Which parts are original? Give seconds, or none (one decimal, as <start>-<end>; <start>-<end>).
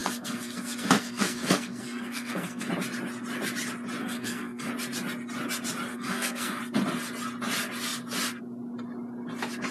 2.7-4.0; 4.7-5.9; 6.6-9.7